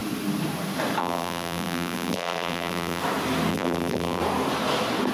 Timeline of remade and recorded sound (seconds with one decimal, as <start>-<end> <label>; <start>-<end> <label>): 0.0-1.0 recorded; 1.0-3.0 remade; 3.0-3.5 recorded; 3.5-4.2 remade; 4.2-5.1 recorded